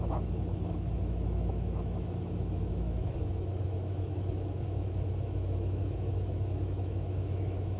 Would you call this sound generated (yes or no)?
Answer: yes